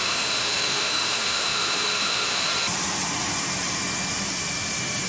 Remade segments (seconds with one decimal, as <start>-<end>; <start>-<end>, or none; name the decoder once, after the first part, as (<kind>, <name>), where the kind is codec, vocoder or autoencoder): 0.0-2.5 (autoencoder, DAC-VAE)